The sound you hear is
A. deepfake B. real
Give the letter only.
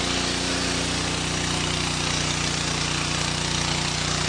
B